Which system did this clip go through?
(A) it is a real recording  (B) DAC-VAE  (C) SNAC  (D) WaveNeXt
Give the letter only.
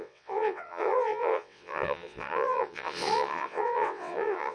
D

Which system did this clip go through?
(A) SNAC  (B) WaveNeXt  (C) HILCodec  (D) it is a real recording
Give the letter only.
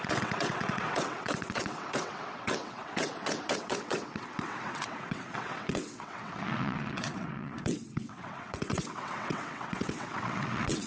B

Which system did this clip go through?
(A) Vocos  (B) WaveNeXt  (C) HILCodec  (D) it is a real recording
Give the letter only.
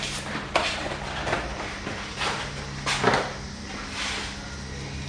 D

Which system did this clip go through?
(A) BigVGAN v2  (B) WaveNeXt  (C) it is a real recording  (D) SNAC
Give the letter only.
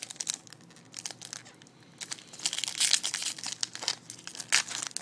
C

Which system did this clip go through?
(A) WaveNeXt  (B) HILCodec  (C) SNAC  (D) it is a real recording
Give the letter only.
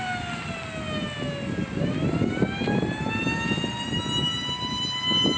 D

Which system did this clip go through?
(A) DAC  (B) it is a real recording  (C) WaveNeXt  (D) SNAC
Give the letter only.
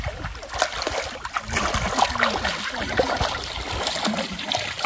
B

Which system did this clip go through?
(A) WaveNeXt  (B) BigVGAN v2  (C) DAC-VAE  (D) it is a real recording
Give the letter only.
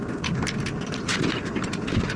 D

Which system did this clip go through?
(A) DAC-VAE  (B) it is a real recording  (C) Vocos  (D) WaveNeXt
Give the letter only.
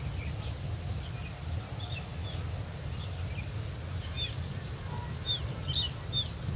B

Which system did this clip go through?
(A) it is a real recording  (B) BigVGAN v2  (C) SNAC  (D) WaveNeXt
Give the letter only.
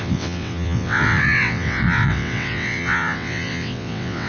D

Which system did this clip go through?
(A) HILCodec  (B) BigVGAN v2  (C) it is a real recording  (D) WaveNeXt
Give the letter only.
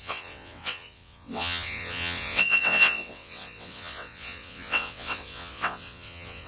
D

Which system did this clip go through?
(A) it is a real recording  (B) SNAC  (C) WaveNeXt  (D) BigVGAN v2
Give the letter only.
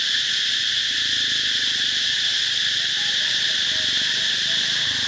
A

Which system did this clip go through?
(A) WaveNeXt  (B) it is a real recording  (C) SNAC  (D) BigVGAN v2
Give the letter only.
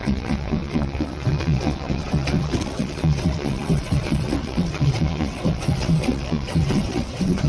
A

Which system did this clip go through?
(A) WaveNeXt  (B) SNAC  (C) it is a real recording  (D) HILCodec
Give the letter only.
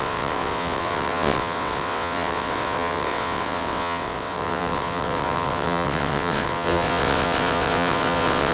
A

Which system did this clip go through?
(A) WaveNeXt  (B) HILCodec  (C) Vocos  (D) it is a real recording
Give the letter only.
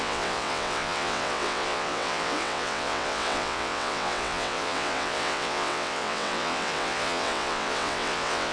A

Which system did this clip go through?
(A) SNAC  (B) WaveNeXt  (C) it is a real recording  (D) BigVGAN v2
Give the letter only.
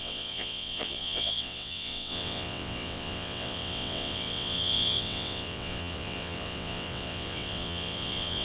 B